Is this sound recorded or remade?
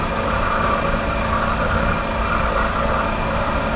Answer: recorded